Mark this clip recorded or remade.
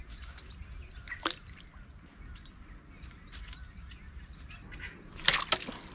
recorded